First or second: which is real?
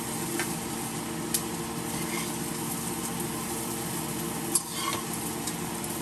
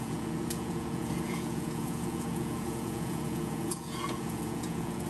first